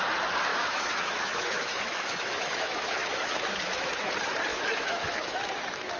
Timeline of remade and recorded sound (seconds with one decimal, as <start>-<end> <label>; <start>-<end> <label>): 0.0-0.5 recorded; 0.5-4.1 remade; 4.1-4.5 recorded; 4.5-6.0 remade